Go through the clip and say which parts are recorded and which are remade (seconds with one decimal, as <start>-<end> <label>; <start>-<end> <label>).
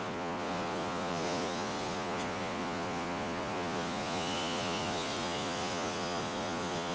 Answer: 0.0-6.9 remade